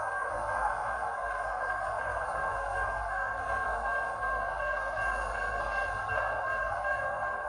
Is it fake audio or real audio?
fake